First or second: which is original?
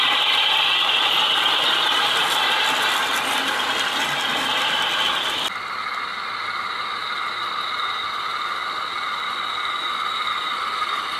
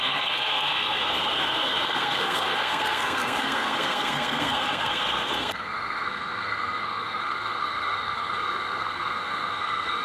first